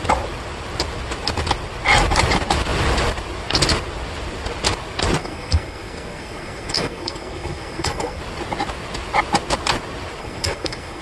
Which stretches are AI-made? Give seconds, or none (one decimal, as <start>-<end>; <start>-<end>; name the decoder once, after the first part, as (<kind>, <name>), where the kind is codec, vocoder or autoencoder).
5.2-8.2 (codec, SNAC); 10.2-11.0